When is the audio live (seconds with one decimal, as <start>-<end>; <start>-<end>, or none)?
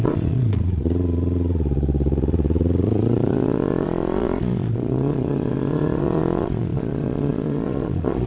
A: none